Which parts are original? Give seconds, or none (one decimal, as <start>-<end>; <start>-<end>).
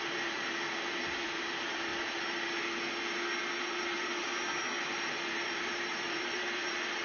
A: 1.9-3.6; 4.1-4.8